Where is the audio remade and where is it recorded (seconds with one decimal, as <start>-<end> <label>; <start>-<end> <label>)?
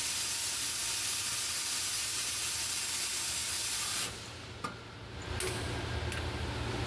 0.0-6.9 recorded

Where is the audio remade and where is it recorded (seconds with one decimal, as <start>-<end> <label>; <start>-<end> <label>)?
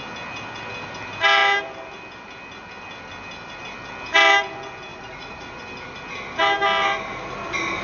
0.0-4.9 recorded; 4.9-5.6 remade; 5.6-7.8 recorded